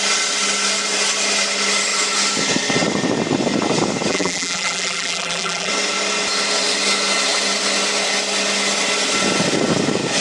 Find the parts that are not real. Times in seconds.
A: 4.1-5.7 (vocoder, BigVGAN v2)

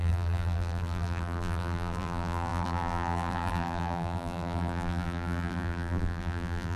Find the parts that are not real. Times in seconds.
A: 0.0-6.8 (vocoder, BigVGAN v2)

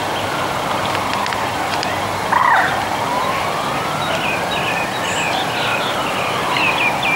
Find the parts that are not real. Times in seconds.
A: 5.7-6.6 (vocoder, BigVGAN v2)

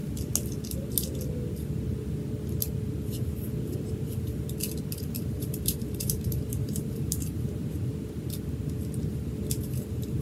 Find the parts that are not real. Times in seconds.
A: 5.0-7.6 (vocoder, BigVGAN v2); 9.6-10.2

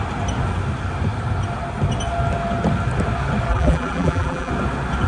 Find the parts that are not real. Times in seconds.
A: 3.5-4.5 (vocoder, BigVGAN v2)

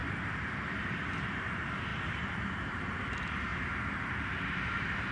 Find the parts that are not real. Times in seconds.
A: 0.0-1.5 (vocoder, BigVGAN v2); 1.9-3.0